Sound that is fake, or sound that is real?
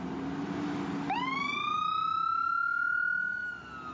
real